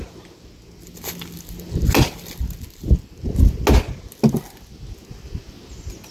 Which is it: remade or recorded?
recorded